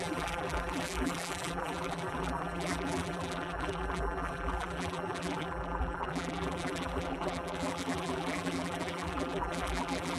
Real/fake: fake